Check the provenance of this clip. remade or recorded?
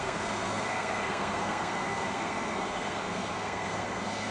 remade